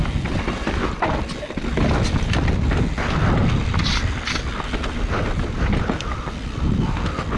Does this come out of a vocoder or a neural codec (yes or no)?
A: no